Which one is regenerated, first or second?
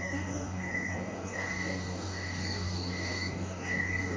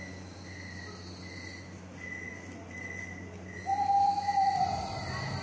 first